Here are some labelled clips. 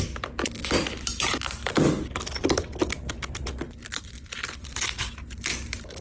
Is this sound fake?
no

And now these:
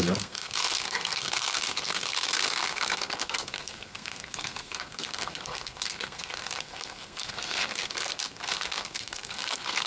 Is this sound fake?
yes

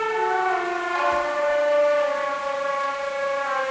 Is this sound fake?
no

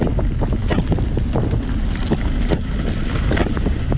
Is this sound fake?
no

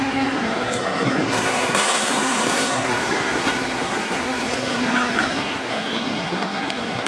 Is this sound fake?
yes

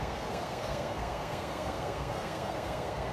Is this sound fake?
yes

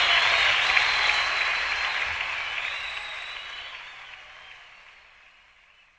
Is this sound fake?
no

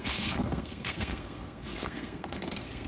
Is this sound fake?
yes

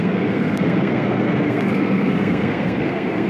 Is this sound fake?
yes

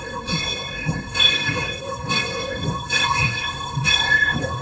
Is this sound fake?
yes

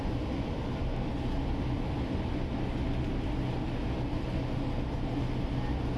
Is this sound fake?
no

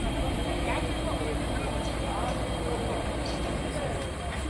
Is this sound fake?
no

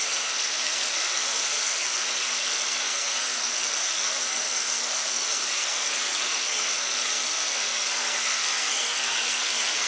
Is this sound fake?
yes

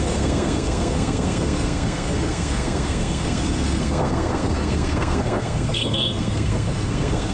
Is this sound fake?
yes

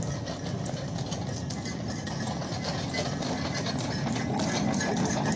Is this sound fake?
no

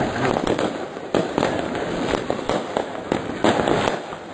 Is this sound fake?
no